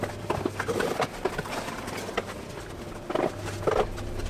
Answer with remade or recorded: recorded